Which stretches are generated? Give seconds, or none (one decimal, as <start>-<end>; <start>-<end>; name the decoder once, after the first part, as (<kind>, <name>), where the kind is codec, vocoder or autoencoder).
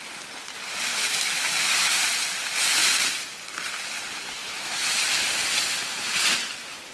0.9-1.9 (autoencoder, DAC-VAE); 4.4-4.9